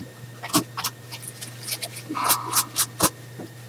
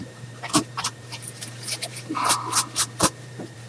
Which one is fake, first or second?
second